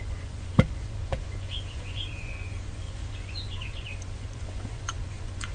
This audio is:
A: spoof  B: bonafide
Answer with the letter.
A